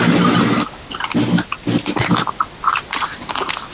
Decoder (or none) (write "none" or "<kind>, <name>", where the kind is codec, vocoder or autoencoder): none